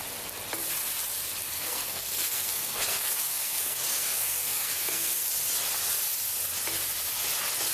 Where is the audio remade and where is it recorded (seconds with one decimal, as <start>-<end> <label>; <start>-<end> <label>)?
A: 0.0-1.5 recorded; 1.5-5.3 remade; 5.3-7.7 recorded